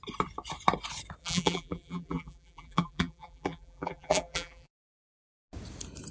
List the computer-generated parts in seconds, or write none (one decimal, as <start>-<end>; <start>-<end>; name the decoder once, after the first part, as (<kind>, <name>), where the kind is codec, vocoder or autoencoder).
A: 1.2-4.9 (vocoder, BigVGAN v2)